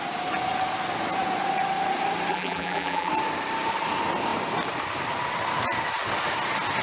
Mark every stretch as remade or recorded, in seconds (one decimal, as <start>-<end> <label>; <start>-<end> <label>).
0.0-2.3 recorded; 2.3-3.1 remade; 3.1-6.8 recorded